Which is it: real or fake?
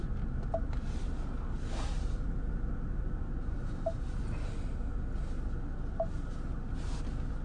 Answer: real